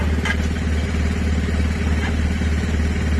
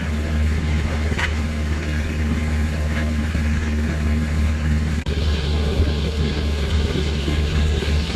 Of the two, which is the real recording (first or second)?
first